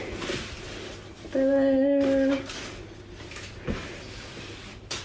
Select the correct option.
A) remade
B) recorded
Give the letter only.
B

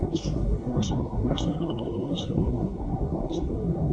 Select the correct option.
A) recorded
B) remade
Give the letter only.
B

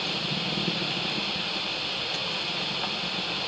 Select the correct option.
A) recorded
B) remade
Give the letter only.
A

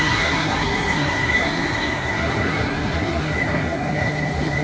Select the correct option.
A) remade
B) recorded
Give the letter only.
A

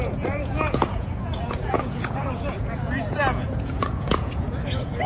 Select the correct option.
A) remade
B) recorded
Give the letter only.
A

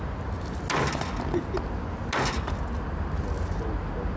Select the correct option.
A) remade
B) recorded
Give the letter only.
B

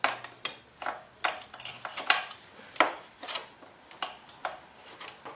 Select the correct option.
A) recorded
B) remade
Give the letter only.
A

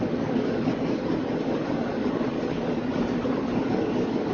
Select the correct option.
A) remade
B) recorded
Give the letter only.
A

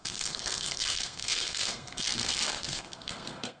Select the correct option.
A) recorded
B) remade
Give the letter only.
B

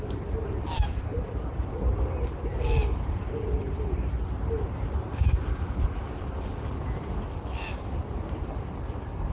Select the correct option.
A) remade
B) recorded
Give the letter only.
B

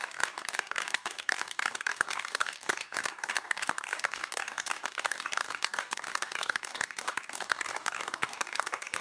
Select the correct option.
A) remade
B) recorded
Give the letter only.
A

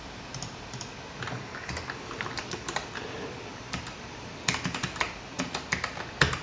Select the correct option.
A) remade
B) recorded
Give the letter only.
A